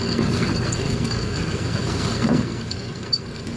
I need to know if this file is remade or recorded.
remade